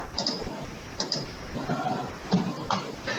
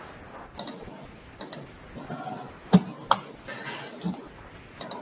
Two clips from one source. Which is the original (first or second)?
second